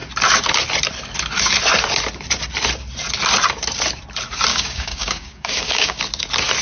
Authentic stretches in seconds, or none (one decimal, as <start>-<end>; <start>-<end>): 0.0-4.5; 6.0-6.6